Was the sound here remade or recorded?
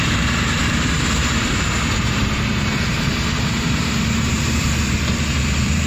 remade